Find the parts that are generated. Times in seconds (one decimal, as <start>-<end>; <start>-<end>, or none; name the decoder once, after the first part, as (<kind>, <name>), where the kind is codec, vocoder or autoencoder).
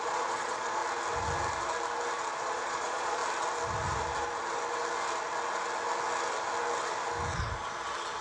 0.0-0.8 (vocoder, Vocos); 2.3-3.2